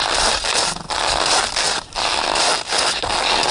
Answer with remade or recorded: recorded